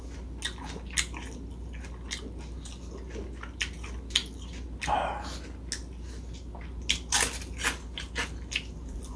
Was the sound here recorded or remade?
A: recorded